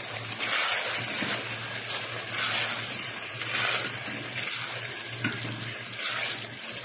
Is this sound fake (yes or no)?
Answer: no